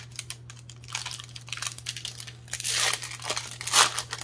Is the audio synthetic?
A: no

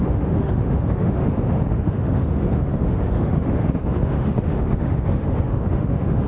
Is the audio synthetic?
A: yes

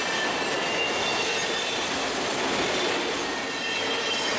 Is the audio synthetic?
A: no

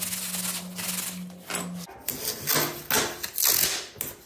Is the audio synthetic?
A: no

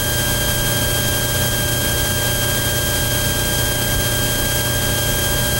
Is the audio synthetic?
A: no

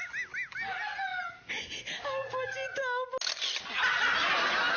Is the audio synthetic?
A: no